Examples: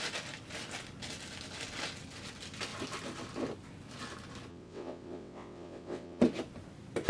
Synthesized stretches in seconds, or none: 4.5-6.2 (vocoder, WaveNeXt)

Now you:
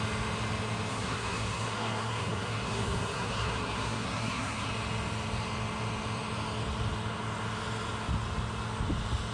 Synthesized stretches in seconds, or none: 0.9-4.7 (codec, SNAC)

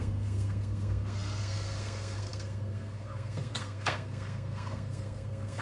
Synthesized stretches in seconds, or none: 0.0-5.6 (codec, SNAC)

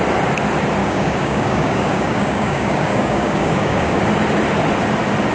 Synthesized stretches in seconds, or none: 0.8-4.0 (codec, DAC)